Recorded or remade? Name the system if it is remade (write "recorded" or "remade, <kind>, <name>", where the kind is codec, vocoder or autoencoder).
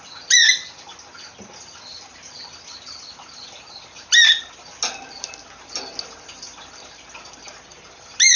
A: recorded